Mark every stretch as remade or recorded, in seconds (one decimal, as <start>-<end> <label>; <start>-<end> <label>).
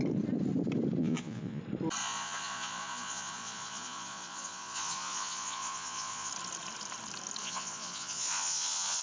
0.0-1.0 recorded; 1.0-1.6 remade; 1.6-2.0 recorded; 2.0-6.3 remade; 6.3-7.4 recorded; 7.4-9.0 remade